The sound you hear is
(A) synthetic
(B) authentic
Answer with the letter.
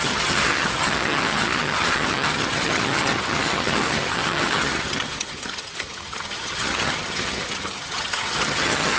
A